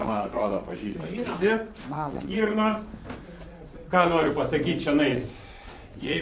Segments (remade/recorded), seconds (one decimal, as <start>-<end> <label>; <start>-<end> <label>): 0.0-2.8 remade; 2.8-3.5 recorded; 3.5-4.3 remade; 4.3-5.1 recorded; 5.1-6.2 remade